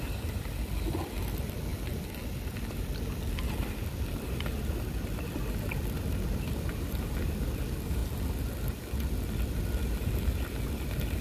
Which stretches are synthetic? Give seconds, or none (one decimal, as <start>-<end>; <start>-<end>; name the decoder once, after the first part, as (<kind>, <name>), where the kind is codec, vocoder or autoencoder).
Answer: none